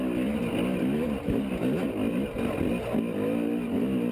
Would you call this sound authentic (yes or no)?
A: yes